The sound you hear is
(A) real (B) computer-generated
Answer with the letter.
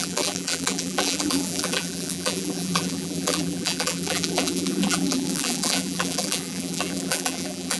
B